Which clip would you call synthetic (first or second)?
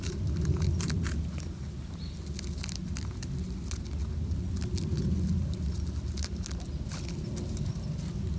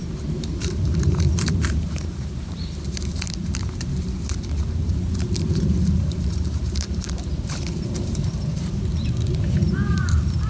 second